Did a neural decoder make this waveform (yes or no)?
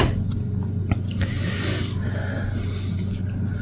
no